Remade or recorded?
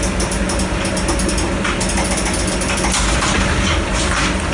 recorded